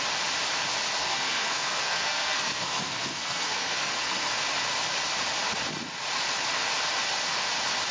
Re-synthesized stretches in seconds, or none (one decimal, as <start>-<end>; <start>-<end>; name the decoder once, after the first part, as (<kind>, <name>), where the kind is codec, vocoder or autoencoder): 1.0-4.3 (codec, SNAC)